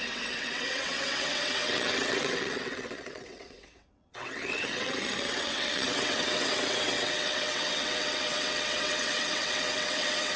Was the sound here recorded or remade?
remade